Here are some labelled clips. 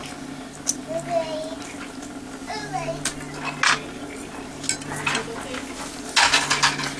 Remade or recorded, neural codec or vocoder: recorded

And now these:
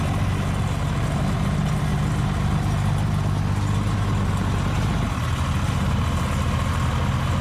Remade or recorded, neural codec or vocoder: recorded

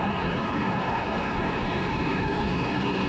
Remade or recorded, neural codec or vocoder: remade, codec, SNAC